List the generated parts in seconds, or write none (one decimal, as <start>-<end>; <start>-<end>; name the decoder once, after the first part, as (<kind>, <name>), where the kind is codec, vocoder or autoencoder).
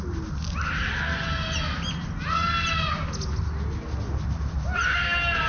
none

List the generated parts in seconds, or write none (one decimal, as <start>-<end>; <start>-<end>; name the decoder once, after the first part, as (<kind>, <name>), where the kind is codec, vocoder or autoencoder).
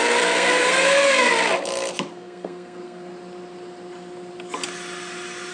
0.0-1.3 (codec, SNAC); 2.1-3.1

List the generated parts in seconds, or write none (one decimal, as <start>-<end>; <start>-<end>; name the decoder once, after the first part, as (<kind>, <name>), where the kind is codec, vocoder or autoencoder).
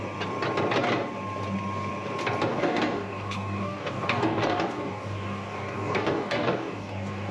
2.5-7.3 (codec, DAC)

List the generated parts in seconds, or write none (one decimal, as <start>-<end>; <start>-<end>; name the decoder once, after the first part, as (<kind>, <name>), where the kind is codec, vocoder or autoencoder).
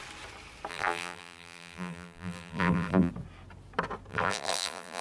0.7-3.1 (vocoder, BigVGAN v2); 4.1-5.0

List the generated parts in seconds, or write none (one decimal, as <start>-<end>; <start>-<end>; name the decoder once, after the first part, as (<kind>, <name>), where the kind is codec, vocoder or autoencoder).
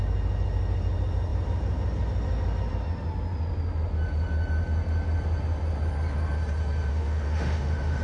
6.9-8.0 (autoencoder, DAC-VAE)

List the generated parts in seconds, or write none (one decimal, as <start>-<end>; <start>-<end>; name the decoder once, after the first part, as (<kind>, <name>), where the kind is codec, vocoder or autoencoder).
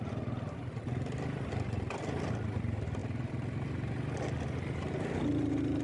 none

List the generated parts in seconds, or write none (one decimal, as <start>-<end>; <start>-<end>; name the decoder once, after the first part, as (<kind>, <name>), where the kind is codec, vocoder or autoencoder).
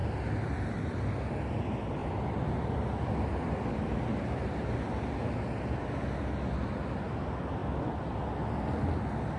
0.0-1.6 (vocoder, BigVGAN v2); 2.0-3.8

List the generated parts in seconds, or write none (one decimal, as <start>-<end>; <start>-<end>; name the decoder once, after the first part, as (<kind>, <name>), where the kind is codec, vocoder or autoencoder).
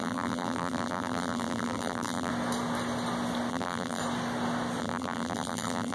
0.0-2.3 (vocoder, BigVGAN v2); 3.5-4.0; 4.8-5.9